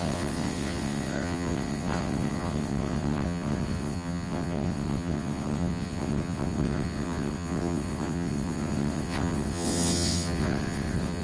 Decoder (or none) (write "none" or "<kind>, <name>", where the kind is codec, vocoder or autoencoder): vocoder, WaveNeXt